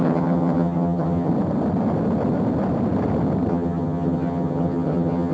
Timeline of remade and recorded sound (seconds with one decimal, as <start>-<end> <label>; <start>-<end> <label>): 0.0-1.3 remade; 1.3-3.5 recorded; 3.5-5.3 remade

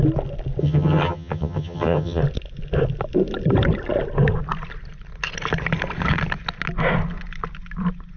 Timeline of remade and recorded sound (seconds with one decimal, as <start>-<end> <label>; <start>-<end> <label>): 0.0-0.6 recorded; 0.6-2.2 remade; 2.2-8.2 recorded

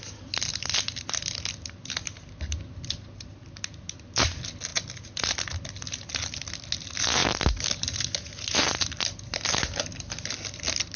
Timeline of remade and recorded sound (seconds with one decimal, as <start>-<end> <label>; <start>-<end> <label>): 0.0-11.0 recorded

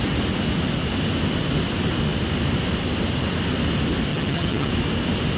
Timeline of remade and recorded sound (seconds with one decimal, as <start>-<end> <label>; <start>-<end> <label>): 0.0-4.1 recorded; 4.1-4.7 remade; 4.7-5.4 recorded

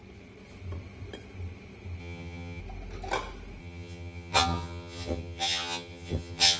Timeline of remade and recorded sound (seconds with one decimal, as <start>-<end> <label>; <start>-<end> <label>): 0.0-2.0 recorded; 2.0-2.6 remade; 2.6-3.6 recorded; 3.6-6.6 remade

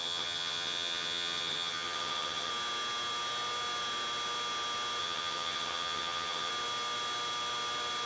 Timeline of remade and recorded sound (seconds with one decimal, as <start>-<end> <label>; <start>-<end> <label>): 0.0-2.5 remade; 2.5-5.0 recorded; 5.0-6.5 remade; 6.5-8.1 recorded